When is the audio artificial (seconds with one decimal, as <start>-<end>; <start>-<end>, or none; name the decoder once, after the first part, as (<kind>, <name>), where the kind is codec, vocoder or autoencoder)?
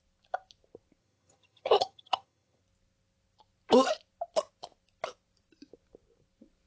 1.0-2.6 (vocoder, HiFi-GAN)